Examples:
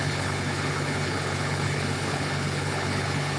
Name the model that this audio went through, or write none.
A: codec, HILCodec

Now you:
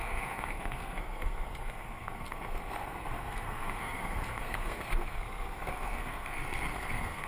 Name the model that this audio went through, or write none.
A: codec, SNAC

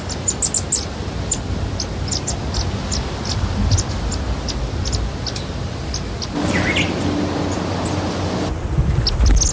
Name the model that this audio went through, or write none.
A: none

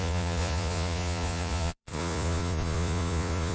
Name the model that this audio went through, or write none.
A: vocoder, Vocos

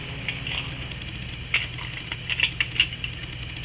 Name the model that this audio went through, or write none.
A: none